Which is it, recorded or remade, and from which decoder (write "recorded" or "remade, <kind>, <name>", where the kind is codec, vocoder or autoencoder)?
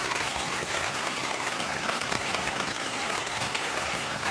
remade, codec, SNAC